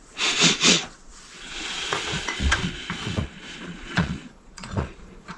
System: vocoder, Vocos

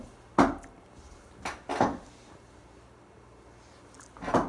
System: none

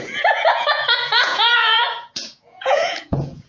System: vocoder, Vocos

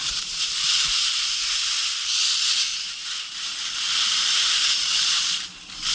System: vocoder, BigVGAN v2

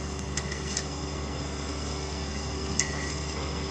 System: codec, SNAC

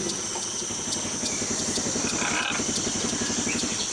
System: none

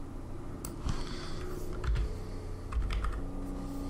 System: none